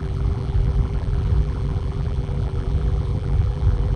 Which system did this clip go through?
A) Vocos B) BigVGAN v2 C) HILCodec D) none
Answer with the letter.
B